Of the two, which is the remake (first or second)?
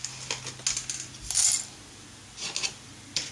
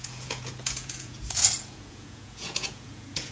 second